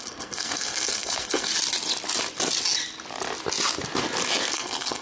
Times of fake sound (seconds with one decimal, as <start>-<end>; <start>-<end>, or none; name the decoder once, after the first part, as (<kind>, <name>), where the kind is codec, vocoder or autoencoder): 0.0-1.5 (codec, SNAC); 4.5-5.0

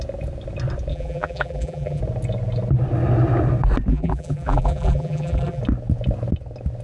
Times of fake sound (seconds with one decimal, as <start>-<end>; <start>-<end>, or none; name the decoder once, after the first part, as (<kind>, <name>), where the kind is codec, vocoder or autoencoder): 0.9-2.0 (vocoder, BigVGAN v2); 3.9-5.6

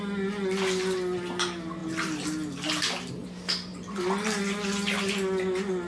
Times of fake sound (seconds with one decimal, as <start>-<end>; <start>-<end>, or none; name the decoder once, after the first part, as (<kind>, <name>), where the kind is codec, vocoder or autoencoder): none

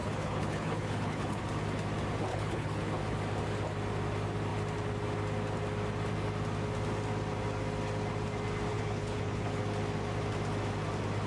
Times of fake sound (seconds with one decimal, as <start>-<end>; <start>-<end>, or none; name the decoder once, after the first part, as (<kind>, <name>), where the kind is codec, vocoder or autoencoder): 0.0-1.4 (codec, HILCodec); 2.3-2.9; 8.7-9.6

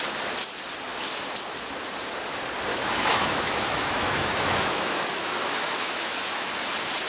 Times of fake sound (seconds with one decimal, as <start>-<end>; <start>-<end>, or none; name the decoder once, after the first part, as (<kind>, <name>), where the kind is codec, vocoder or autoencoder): 2.7-6.5 (autoencoder, DAC-VAE)

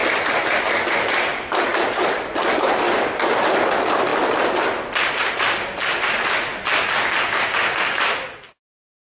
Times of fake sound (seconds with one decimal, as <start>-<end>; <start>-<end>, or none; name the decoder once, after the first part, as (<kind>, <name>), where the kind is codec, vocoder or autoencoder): 1.3-2.8 (vocoder, BigVGAN v2)

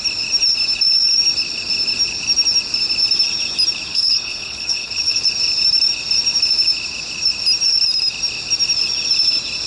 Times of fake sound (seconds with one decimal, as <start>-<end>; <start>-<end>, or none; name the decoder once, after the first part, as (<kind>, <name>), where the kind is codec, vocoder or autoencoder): 3.9-5.2 (codec, HILCodec)